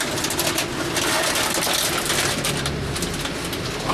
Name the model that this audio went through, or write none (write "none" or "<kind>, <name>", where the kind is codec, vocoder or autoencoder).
none